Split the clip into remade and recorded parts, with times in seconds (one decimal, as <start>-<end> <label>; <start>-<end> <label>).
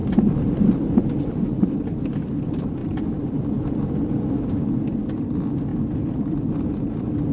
0.0-2.2 remade; 2.2-2.8 recorded; 2.8-4.5 remade; 4.5-5.7 recorded; 5.7-6.7 remade; 6.7-7.3 recorded